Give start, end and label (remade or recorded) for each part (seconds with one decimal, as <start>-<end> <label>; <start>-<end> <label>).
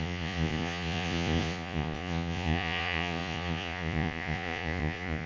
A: 0.0-5.3 remade